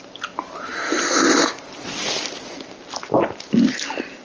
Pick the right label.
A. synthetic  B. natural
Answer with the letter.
B